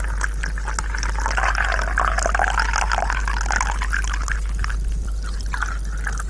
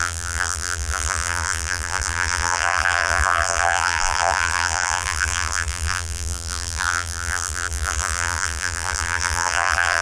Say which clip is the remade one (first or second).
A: second